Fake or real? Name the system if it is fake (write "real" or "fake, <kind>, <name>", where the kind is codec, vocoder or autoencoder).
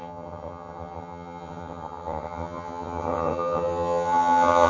fake, vocoder, HiFi-GAN